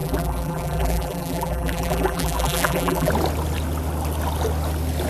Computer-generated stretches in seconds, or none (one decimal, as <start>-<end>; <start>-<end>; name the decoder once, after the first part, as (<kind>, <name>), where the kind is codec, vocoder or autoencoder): 0.0-3.1 (vocoder, BigVGAN v2)